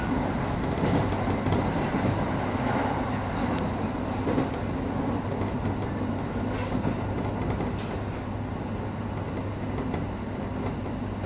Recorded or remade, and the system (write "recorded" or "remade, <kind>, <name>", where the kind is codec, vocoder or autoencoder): recorded